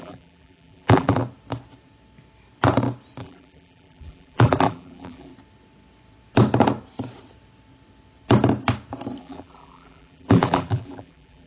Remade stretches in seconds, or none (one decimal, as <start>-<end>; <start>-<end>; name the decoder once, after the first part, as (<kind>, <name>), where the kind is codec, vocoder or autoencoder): 0.0-1.2 (vocoder, BigVGAN v2); 3.2-5.3; 9.2-11.5

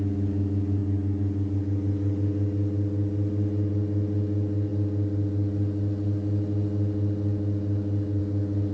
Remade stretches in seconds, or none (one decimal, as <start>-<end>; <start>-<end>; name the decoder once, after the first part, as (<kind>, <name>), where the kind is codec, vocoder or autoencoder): none